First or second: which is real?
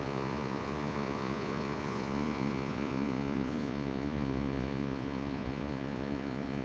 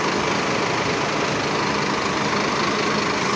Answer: second